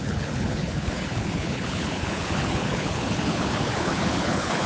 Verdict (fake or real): fake